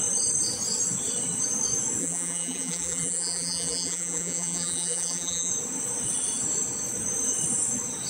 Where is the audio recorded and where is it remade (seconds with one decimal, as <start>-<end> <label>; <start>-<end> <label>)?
0.0-2.0 recorded; 2.0-5.5 remade; 5.5-8.1 recorded